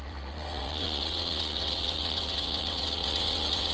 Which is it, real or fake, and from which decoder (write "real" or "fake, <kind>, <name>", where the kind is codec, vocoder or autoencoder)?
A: fake, vocoder, WaveNeXt